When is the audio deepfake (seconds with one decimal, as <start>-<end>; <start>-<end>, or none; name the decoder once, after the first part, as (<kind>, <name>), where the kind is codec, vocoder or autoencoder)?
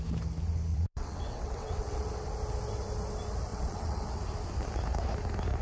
0.7-2.1 (vocoder, WaveNeXt); 3.5-4.2